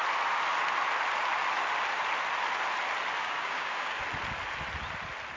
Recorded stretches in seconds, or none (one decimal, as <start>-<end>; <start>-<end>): 0.0-3.2; 4.0-5.4